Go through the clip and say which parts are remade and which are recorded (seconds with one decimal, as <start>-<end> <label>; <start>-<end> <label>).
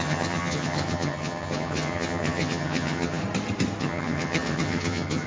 0.0-3.2 remade; 3.2-3.8 recorded; 3.8-5.3 remade